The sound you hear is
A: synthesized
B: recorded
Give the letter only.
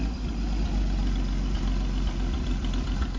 B